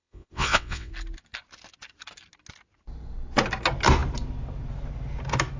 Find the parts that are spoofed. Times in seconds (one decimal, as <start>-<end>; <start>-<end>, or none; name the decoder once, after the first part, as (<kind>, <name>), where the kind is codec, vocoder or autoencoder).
0.0-0.9 (vocoder, WaveNeXt)